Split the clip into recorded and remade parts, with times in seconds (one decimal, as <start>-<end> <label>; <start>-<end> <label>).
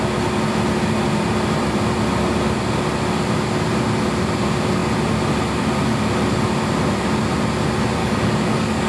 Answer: 0.0-8.0 recorded; 8.0-8.9 remade